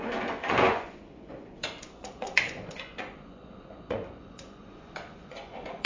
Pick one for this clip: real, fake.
fake